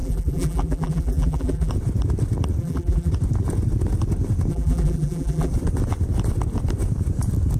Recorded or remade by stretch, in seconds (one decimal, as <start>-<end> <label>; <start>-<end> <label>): 0.0-1.7 remade; 1.7-2.6 recorded; 2.6-3.1 remade; 3.1-4.5 recorded; 4.5-5.5 remade; 5.5-7.6 recorded